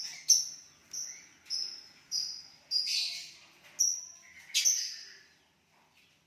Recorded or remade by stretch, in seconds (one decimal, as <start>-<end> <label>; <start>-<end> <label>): 0.0-6.3 recorded